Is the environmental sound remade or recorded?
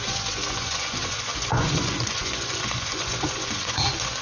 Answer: remade